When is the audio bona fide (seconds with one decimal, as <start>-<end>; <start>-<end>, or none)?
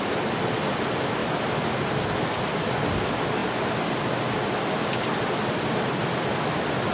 0.0-6.9